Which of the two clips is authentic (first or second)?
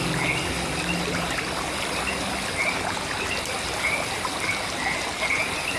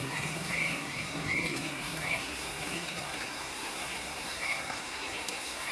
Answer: first